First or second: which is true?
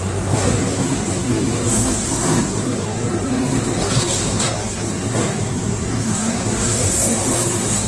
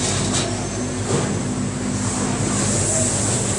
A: second